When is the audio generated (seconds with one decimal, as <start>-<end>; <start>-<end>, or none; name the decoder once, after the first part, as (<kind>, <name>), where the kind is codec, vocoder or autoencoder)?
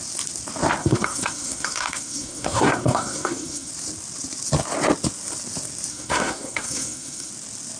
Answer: 0.8-3.7 (codec, SNAC); 5.9-7.3